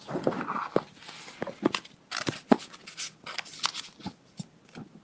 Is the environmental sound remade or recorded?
recorded